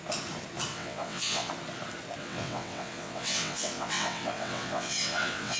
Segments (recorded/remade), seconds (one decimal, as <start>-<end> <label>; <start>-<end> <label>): 0.0-0.7 recorded; 0.7-1.5 remade; 1.5-2.2 recorded; 2.2-5.6 remade